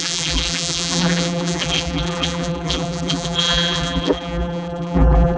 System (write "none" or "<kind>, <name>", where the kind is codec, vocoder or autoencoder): vocoder, BigVGAN v2